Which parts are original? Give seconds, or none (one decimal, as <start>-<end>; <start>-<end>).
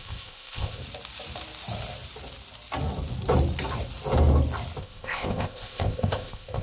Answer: 0.8-4.8